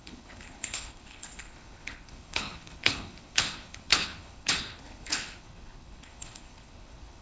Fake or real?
fake